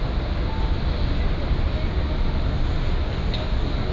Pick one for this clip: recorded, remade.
recorded